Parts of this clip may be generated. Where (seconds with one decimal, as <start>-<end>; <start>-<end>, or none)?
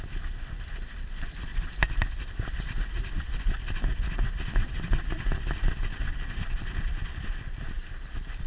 none